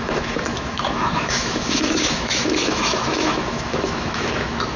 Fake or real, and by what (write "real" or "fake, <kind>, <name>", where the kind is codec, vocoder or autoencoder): fake, autoencoder, DAC-VAE